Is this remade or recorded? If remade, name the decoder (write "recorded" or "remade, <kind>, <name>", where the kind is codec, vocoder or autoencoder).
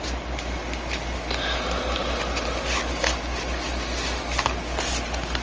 recorded